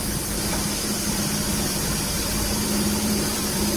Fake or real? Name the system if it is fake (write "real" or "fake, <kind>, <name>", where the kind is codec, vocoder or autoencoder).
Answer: fake, vocoder, BigVGAN v2